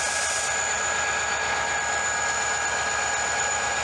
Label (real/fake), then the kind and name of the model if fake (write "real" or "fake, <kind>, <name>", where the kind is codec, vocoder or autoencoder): real